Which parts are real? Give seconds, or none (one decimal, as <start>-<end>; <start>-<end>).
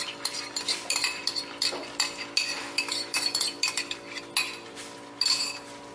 0.0-2.6; 3.4-5.9